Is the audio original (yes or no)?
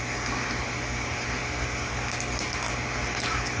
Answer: yes